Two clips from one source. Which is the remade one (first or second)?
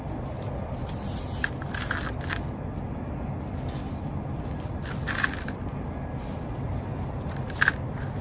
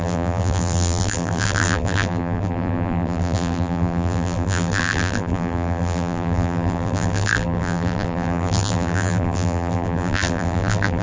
second